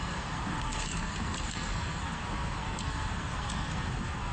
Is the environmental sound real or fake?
fake